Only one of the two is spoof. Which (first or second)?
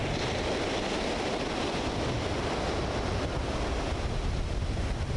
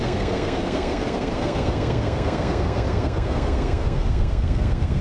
second